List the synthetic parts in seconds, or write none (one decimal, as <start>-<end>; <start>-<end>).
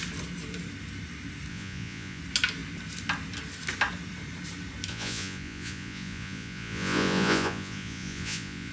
1.5-2.2; 4.9-8.7